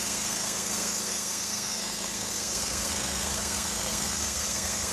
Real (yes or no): no